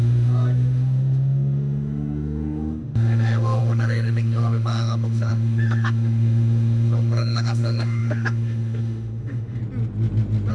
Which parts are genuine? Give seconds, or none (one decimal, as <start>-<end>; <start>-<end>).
9.6-10.5